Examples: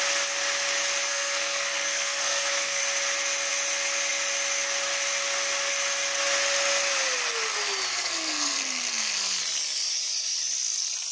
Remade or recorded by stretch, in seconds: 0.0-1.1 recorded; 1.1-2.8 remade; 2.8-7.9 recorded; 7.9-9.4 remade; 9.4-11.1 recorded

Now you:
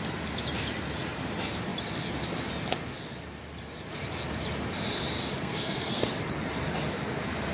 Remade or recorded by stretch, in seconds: 0.0-5.4 recorded; 5.4-6.0 remade; 6.0-7.5 recorded

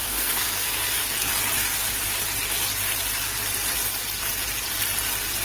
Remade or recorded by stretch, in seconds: 0.0-1.3 remade; 1.3-5.4 recorded

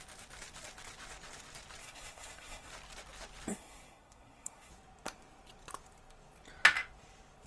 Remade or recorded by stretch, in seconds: 0.0-1.8 recorded; 1.8-2.7 remade; 2.7-3.5 recorded; 3.5-4.7 remade; 4.7-7.5 recorded

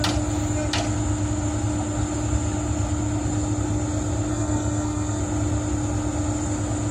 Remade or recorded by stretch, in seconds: 0.0-4.3 recorded; 4.3-5.2 remade; 5.2-6.9 recorded

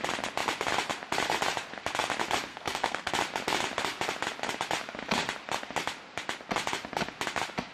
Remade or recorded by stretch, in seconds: 0.0-2.5 recorded; 2.5-3.1 remade; 3.1-7.7 recorded